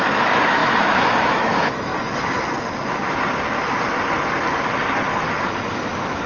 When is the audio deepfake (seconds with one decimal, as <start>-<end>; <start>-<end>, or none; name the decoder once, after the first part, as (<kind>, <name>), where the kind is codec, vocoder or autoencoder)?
0.0-1.9 (autoencoder, DAC-VAE); 5.7-6.3